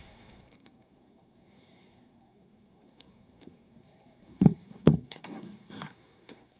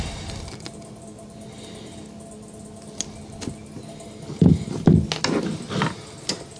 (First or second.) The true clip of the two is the second